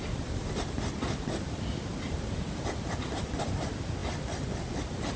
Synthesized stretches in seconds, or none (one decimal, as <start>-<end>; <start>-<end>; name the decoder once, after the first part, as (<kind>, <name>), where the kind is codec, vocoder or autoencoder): none

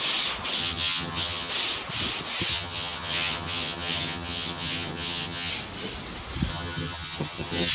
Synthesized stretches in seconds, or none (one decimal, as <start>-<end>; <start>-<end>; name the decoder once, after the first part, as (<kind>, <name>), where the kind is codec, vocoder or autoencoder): 0.6-1.5 (vocoder, HiFi-GAN); 2.5-5.5; 6.5-7.7

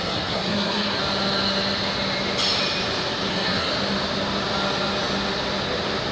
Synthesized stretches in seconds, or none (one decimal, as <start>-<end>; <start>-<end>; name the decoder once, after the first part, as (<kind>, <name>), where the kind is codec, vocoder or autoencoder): 0.0-1.0 (codec, SNAC); 3.3-3.7

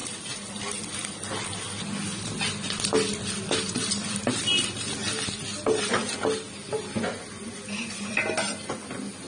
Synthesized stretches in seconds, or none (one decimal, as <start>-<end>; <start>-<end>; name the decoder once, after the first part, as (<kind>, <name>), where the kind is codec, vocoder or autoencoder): none